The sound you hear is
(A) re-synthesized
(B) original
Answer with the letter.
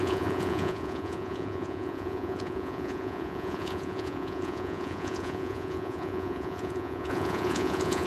A